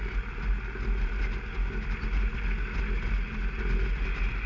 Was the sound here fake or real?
real